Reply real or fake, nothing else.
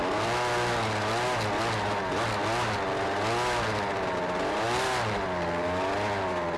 real